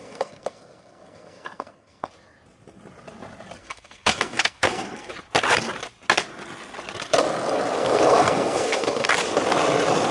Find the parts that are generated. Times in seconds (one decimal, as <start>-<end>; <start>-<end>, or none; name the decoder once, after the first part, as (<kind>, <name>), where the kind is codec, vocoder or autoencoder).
0.0-2.1 (codec, SNAC); 3.6-5.1; 7.8-9.1